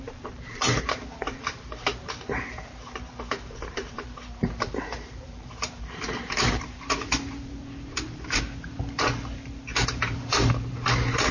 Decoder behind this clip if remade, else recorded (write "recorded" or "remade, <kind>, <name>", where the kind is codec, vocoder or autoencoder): remade, vocoder, BigVGAN v2